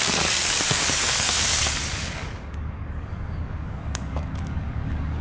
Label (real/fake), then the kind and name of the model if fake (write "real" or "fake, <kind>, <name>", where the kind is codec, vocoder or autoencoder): fake, codec, DAC